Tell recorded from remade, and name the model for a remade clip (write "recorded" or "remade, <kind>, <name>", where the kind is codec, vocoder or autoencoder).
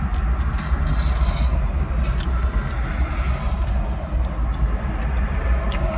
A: recorded